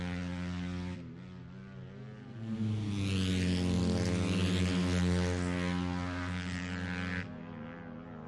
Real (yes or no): yes